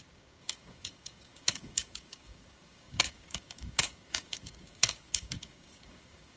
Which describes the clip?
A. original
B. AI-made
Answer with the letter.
B